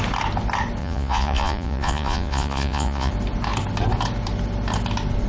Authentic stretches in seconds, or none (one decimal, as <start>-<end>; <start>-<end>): 0.0-0.8; 3.1-5.3